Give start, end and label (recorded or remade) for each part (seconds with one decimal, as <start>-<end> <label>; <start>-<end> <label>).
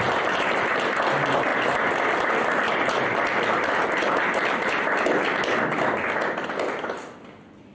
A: 0.0-7.7 recorded